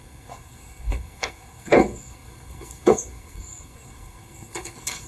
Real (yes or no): no